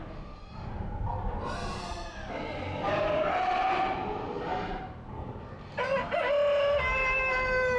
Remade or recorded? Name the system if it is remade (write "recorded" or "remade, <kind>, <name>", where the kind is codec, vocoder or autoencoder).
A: recorded